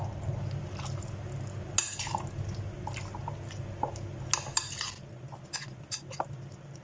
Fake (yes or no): no